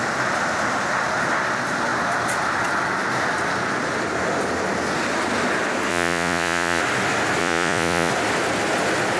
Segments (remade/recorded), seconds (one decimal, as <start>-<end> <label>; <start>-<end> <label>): 0.0-5.9 recorded; 5.9-6.8 remade; 6.8-7.4 recorded; 7.4-8.1 remade; 8.1-9.2 recorded